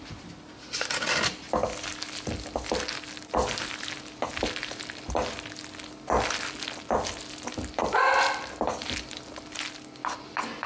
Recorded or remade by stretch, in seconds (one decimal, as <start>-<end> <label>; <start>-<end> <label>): 0.0-10.7 recorded